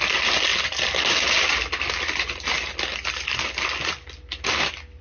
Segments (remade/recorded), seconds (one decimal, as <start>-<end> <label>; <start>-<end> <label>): 0.0-5.0 recorded